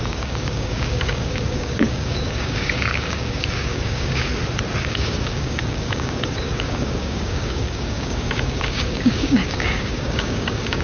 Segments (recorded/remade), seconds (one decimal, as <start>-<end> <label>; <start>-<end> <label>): 0.0-4.3 remade; 4.3-4.8 recorded; 4.8-10.8 remade